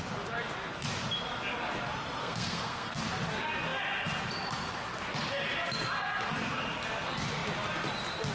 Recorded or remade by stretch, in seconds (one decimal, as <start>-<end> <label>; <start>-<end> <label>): 0.0-2.2 recorded; 2.2-3.0 remade; 3.0-8.3 recorded